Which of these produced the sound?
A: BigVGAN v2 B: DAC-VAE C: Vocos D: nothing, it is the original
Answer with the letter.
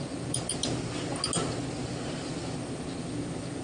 D